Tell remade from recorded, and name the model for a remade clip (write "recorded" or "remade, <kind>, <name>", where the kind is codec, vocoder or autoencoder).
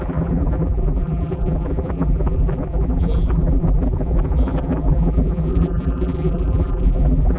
remade, vocoder, BigVGAN v2